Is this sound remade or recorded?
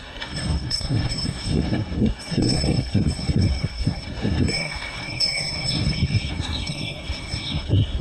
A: remade